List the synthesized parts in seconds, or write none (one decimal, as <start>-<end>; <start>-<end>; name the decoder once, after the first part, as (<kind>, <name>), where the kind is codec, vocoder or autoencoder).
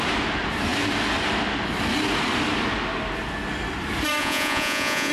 4.2-5.1 (vocoder, Vocos)